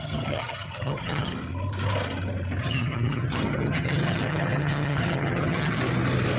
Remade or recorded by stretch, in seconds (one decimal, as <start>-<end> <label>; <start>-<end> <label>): 0.0-1.3 remade; 1.3-2.6 recorded; 2.6-5.8 remade; 5.8-6.4 recorded